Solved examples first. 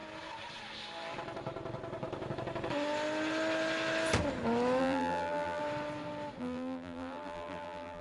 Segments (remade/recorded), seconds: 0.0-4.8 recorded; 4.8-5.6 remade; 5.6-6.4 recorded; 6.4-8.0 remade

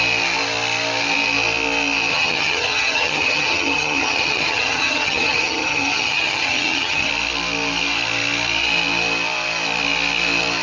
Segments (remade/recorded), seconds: 0.0-2.1 recorded; 2.1-7.1 remade; 7.1-10.6 recorded

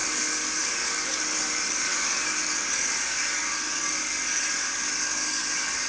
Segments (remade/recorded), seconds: 0.0-5.9 remade

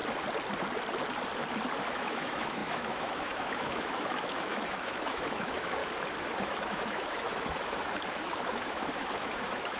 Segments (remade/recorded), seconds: 0.0-1.9 recorded; 1.9-5.8 remade; 5.8-6.4 recorded; 6.4-9.8 remade

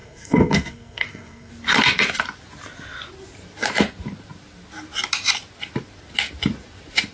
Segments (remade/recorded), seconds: 0.0-1.5 remade; 1.5-7.1 recorded

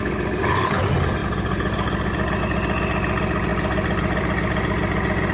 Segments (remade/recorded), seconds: 0.0-5.3 recorded

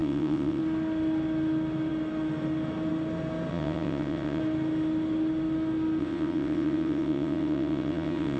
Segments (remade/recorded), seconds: 0.0-0.6 remade; 0.6-3.5 recorded; 3.5-4.4 remade; 4.4-6.0 recorded; 6.0-8.4 remade

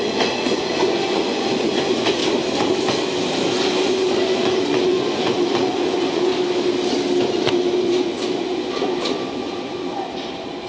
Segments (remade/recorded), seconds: 0.0-2.2 remade; 2.2-3.9 recorded; 3.9-6.3 remade; 6.3-7.3 recorded; 7.3-10.7 remade